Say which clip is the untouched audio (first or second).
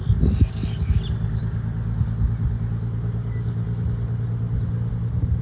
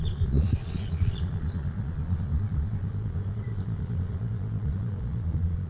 first